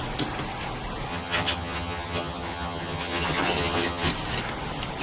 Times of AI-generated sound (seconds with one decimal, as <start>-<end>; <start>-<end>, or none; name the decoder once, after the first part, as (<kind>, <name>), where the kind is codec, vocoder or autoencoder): 1.1-4.1 (vocoder, HiFi-GAN)